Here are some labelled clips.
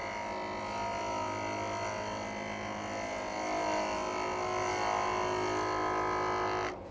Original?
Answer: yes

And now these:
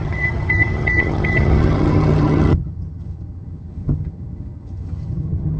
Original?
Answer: no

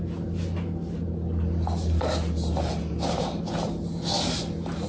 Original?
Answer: yes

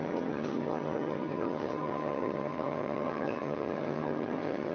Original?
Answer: no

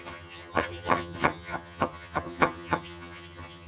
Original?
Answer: no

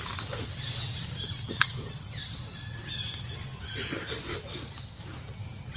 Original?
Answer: yes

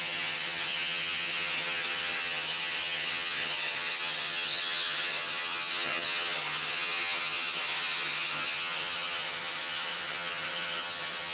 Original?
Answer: no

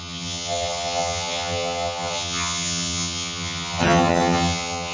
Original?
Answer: no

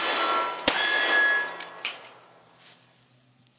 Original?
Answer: yes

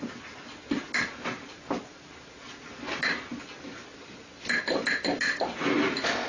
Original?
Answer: yes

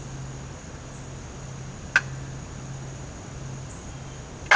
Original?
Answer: yes